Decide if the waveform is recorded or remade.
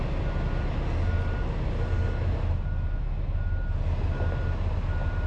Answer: recorded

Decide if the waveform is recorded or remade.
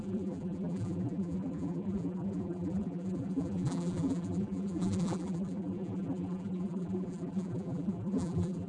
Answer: remade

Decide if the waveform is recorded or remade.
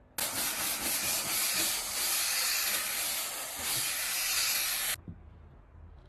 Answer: recorded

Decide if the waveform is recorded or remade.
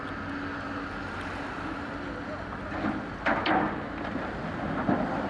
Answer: recorded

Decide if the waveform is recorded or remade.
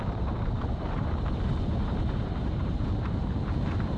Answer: remade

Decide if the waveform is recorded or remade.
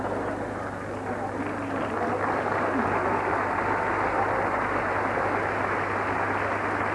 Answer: recorded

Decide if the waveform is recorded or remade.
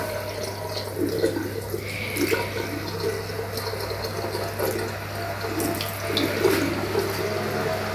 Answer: recorded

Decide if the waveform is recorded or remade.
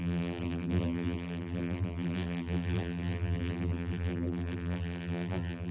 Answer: remade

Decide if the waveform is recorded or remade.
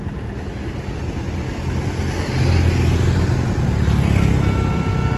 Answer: recorded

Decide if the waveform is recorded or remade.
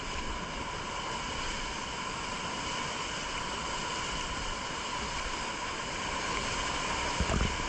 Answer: remade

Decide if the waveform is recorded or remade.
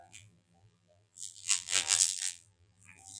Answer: remade